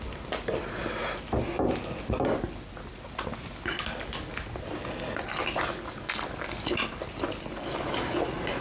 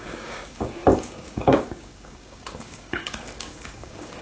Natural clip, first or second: first